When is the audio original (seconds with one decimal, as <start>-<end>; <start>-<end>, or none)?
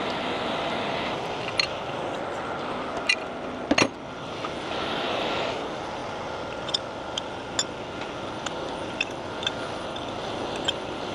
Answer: 0.0-11.1